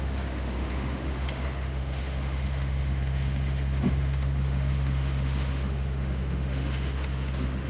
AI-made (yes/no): yes